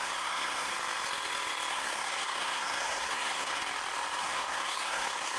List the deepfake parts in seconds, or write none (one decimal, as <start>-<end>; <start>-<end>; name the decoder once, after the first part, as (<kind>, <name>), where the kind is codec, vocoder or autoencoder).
0.0-0.7 (codec, SNAC); 1.7-3.6; 4.2-5.4